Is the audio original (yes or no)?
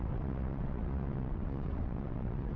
no